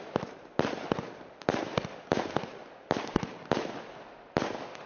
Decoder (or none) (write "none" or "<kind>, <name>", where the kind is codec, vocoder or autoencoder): none